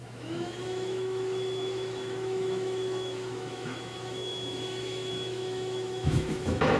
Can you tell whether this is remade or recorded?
remade